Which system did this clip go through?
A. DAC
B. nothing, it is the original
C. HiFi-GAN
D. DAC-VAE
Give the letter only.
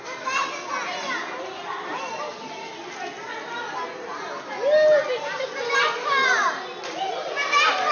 B